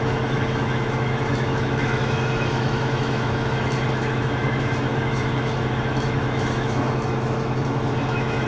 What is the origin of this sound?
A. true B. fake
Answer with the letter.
B